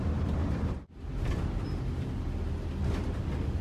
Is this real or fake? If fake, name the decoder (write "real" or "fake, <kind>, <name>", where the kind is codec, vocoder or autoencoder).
real